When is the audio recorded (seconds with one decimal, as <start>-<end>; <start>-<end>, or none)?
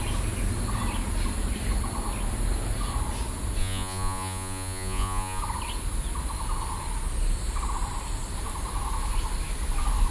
0.0-3.6; 5.4-10.1